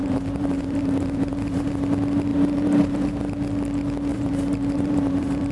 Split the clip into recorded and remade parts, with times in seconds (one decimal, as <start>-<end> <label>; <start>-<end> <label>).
0.0-1.7 remade; 1.7-2.3 recorded; 2.3-3.2 remade; 3.2-4.1 recorded; 4.1-5.5 remade